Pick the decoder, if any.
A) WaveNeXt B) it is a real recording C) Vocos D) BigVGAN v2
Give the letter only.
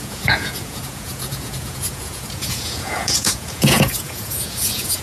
C